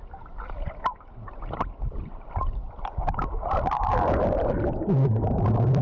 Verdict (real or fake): real